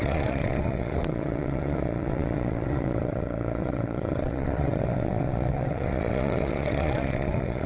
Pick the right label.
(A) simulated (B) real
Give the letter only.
A